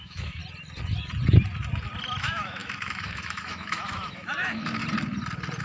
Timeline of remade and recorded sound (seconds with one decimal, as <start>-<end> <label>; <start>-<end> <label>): 0.0-0.4 remade; 0.4-2.2 recorded; 2.2-4.8 remade; 4.8-5.6 recorded